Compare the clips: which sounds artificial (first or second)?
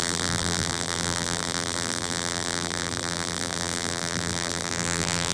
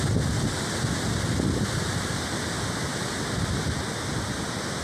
first